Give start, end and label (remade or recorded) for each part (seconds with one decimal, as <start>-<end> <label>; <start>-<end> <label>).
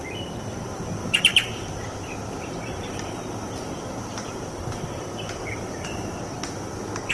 0.0-1.0 recorded; 1.0-4.8 remade; 4.8-5.5 recorded; 5.5-6.1 remade; 6.1-7.1 recorded